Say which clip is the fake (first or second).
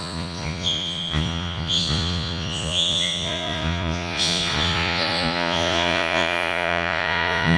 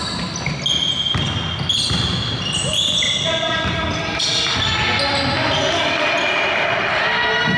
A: first